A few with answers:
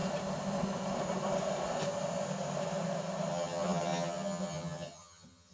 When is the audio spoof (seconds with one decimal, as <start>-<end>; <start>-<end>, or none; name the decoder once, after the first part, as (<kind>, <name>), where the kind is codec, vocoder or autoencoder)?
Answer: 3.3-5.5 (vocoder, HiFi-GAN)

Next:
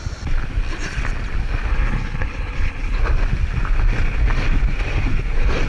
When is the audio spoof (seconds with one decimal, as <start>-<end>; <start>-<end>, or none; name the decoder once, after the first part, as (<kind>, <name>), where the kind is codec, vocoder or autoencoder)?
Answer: 1.7-3.0 (codec, HILCodec)

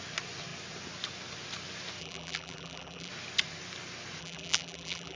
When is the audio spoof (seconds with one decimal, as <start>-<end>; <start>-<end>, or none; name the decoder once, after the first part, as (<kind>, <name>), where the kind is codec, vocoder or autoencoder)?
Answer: 2.0-3.1 (vocoder, BigVGAN v2); 4.2-5.2